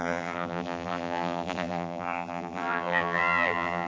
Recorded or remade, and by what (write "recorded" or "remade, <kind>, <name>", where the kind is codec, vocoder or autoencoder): remade, vocoder, BigVGAN v2